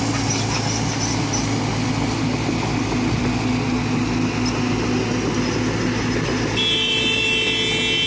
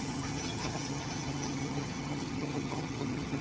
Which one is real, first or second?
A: first